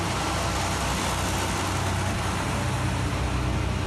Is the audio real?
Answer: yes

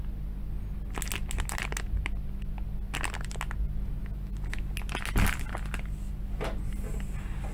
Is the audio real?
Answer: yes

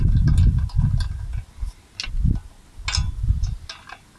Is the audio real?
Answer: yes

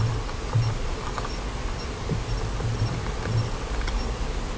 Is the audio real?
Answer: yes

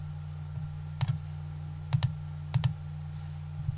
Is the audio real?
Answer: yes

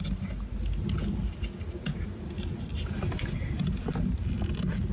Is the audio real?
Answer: yes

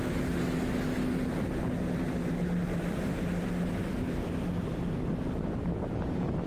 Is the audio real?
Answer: yes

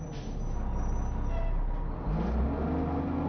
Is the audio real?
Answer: yes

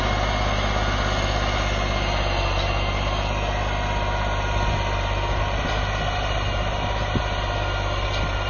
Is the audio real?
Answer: yes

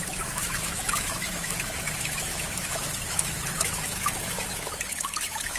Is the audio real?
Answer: no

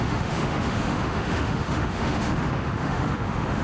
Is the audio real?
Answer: no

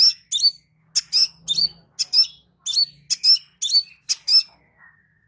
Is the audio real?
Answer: yes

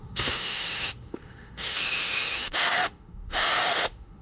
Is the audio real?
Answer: no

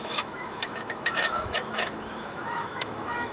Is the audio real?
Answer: no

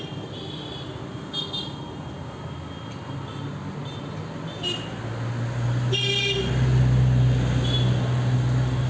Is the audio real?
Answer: yes